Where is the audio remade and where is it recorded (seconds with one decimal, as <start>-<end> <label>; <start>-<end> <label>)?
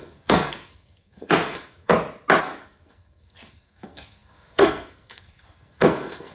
0.0-1.9 remade; 1.9-2.4 recorded; 2.4-6.3 remade